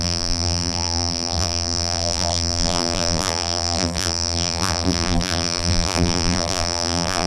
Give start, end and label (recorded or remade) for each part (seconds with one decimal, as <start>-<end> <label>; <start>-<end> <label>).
0.0-7.3 remade